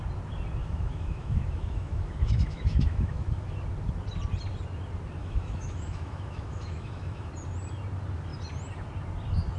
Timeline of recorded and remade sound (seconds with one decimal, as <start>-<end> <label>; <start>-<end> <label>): 0.0-0.6 recorded; 0.6-3.5 remade; 3.5-5.2 recorded; 5.2-7.3 remade; 7.3-9.6 recorded